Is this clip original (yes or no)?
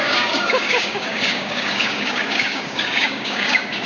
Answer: no